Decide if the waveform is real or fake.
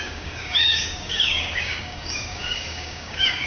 fake